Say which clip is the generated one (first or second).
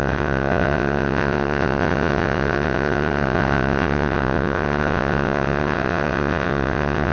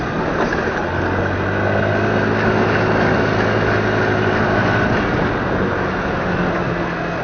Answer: first